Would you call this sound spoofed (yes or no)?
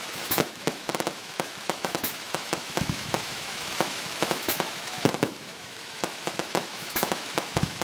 yes